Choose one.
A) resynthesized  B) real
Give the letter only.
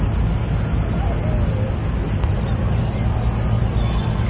B